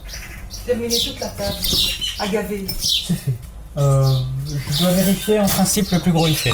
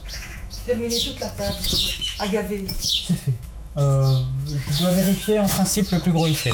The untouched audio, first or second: first